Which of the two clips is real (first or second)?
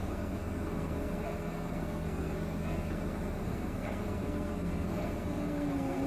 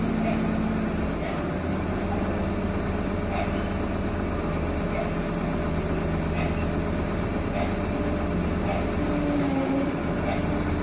second